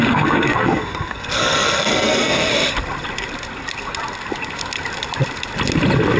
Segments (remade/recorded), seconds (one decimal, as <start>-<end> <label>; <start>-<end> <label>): 0.0-2.5 remade; 2.5-6.2 recorded